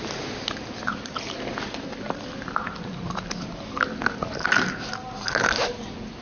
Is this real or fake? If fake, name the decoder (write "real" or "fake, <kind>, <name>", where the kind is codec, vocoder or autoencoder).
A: real